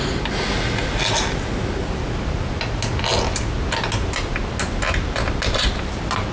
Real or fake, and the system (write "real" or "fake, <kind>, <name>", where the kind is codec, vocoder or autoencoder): real